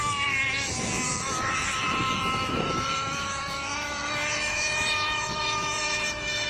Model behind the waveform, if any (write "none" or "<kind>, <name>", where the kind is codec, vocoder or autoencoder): autoencoder, DAC-VAE